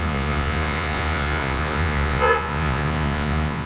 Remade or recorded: remade